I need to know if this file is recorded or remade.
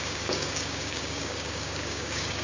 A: remade